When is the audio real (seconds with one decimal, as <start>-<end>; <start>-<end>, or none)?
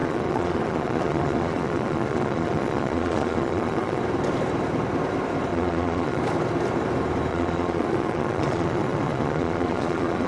4.0-5.5; 6.2-7.3